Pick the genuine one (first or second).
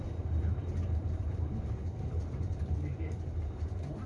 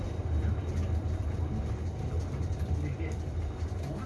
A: second